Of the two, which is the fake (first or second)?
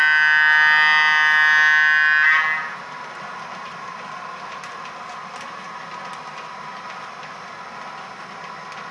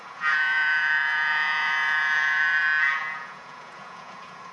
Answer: second